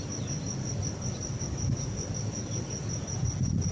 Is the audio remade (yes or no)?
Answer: no